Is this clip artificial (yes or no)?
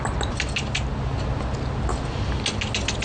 no